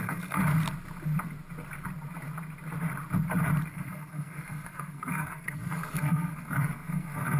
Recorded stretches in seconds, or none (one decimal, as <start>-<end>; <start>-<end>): 0.4-3.7

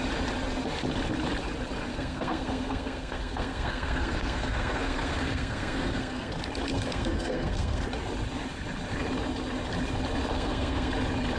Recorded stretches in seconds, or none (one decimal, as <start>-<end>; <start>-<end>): 0.0-1.9; 6.3-6.7; 7.8-10.3; 10.9-11.4

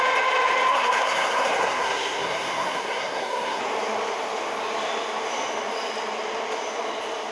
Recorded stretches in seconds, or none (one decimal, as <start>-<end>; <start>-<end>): 0.0-0.7; 3.6-7.3

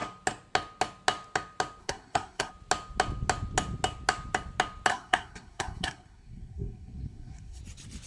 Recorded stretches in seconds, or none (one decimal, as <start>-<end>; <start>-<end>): 0.0-1.8; 2.5-4.9; 7.6-8.1

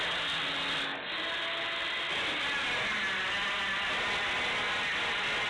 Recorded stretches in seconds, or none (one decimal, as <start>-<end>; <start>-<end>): 0.0-5.5